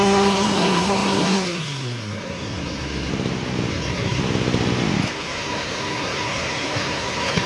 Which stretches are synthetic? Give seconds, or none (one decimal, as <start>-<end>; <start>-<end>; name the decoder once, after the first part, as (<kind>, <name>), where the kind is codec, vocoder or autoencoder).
0.0-3.1 (codec, SNAC); 3.7-4.2; 5.1-7.5